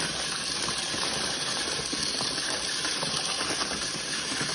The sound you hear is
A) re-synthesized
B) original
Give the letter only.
B